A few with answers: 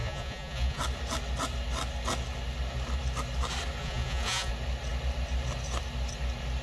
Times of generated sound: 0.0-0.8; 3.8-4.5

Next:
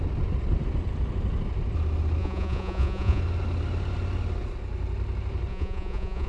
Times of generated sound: 2.2-3.2; 5.5-6.3

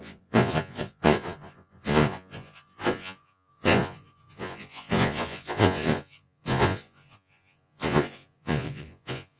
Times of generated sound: 0.0-9.4

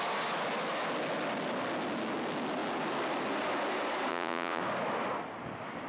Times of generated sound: 4.1-4.6